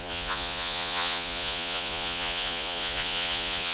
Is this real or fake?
fake